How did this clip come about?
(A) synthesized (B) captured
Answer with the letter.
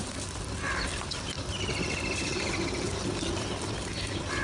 A